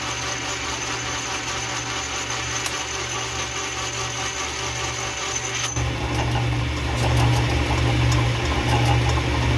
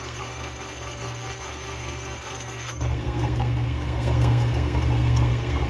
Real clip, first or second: first